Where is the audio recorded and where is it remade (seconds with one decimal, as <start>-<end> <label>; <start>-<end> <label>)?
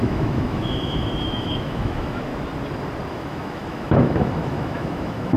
0.0-2.3 remade; 2.3-3.1 recorded; 3.1-5.4 remade